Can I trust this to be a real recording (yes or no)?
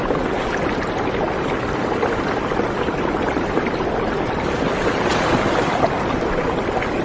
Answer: yes